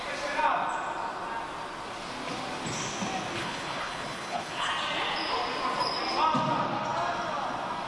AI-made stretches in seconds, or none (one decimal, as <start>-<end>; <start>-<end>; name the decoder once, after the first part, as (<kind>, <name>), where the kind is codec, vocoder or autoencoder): 3.4-4.7 (codec, HILCodec)